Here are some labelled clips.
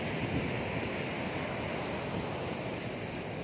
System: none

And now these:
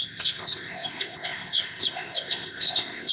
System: codec, ZipCodec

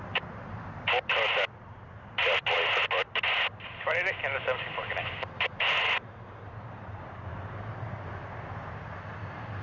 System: none